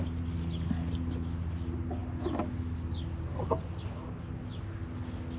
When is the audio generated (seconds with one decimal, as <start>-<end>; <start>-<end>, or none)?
none